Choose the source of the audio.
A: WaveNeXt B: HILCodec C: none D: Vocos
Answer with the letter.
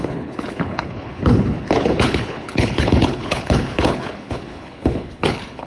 B